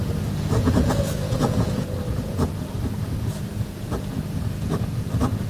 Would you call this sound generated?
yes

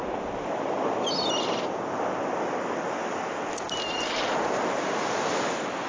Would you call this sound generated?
no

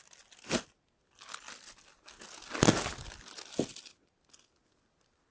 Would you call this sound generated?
no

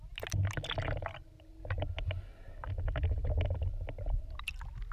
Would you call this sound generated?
no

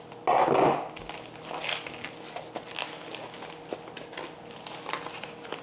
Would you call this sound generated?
no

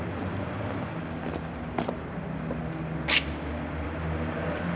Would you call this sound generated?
yes